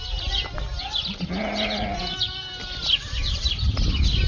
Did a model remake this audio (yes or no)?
no